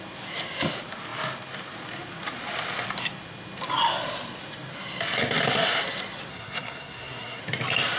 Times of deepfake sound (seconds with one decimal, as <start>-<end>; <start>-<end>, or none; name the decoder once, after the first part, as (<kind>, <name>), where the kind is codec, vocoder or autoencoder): 6.3-7.4 (codec, SNAC)